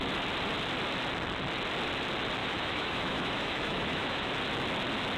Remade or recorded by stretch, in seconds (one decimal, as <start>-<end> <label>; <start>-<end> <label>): 0.0-2.4 recorded; 2.4-4.3 remade; 4.3-5.2 recorded